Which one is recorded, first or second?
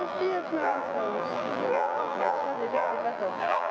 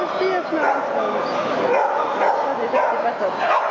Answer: second